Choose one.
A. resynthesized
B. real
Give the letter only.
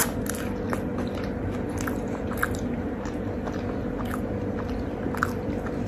B